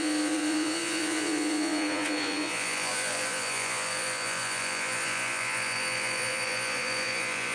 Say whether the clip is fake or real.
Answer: fake